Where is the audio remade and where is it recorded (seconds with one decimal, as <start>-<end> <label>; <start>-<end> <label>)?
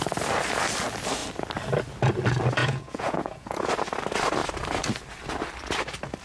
0.0-2.6 recorded; 2.6-3.7 remade; 3.7-6.2 recorded